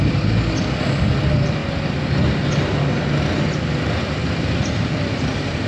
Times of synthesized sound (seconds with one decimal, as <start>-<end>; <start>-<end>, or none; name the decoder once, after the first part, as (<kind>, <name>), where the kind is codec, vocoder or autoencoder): none